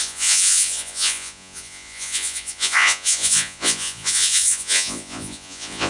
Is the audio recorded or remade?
remade